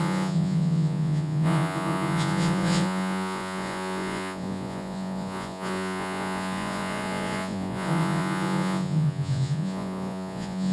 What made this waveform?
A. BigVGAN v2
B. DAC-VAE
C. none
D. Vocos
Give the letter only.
D